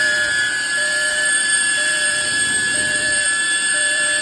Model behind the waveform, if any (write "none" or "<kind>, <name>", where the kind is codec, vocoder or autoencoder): vocoder, BigVGAN v2